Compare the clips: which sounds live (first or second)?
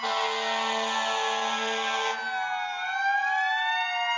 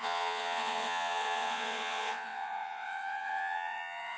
first